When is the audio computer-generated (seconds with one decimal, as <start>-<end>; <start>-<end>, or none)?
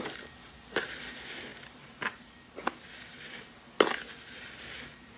none